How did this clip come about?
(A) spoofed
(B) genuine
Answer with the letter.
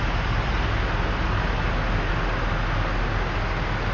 B